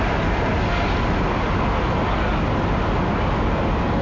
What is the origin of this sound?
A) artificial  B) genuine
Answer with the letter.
B